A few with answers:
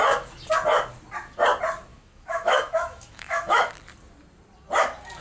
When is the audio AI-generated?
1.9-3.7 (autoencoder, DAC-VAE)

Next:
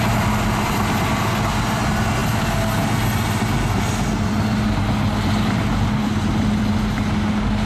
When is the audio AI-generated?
none